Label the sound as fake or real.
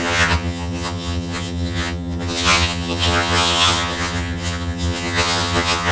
fake